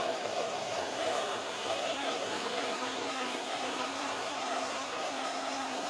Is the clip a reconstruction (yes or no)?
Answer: yes